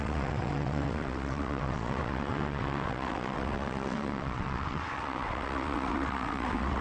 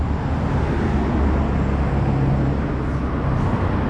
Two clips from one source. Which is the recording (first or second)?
second